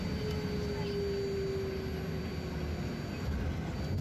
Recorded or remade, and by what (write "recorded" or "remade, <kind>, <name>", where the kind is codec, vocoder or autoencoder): recorded